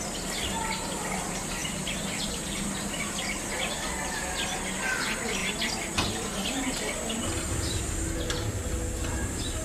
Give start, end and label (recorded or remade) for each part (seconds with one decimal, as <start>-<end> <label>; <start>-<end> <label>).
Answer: 0.0-1.6 recorded; 1.6-3.2 remade; 3.2-9.6 recorded